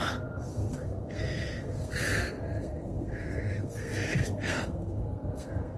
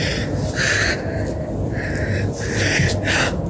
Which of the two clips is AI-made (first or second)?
first